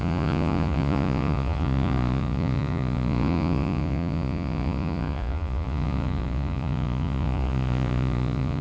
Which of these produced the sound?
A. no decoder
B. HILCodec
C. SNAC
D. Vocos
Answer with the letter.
D